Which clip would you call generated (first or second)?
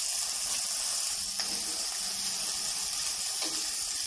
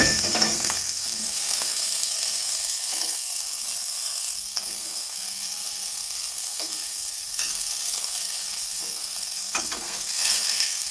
second